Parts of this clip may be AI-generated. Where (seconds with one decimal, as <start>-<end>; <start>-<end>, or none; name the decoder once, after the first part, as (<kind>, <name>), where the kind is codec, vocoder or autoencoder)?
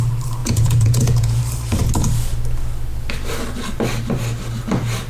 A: 0.4-1.4 (vocoder, Vocos)